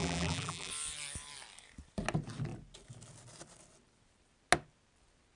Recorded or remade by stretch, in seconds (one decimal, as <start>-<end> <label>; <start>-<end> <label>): 0.0-0.7 remade; 0.7-5.4 recorded